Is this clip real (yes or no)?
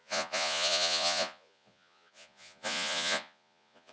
no